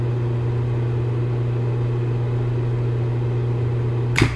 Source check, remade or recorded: recorded